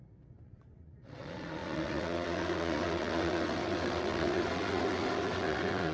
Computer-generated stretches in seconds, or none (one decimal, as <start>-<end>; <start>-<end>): 0.0-5.9